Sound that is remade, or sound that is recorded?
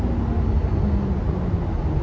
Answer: recorded